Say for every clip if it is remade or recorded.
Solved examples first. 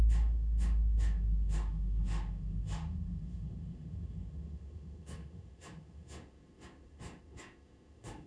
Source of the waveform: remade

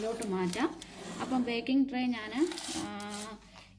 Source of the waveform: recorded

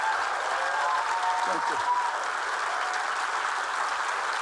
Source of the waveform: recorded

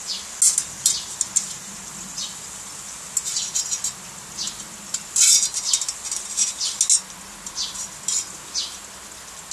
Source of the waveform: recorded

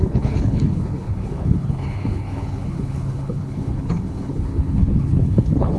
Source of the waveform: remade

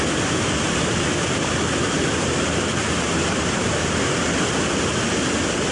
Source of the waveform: recorded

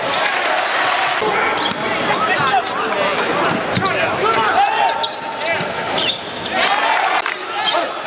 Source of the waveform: recorded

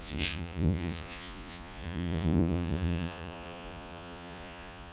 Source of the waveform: remade